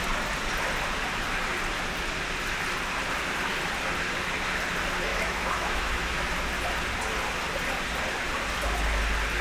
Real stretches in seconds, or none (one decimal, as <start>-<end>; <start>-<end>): 0.0-5.1; 6.3-9.4